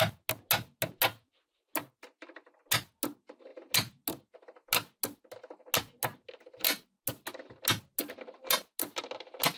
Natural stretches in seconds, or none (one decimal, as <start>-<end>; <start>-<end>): 0.0-9.6